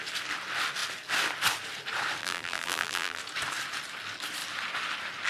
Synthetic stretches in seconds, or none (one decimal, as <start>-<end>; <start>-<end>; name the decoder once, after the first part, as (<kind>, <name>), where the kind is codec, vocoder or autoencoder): 2.2-3.2 (vocoder, BigVGAN v2)